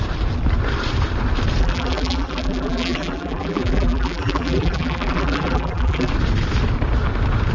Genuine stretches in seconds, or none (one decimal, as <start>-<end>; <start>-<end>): 0.0-1.6; 6.1-7.5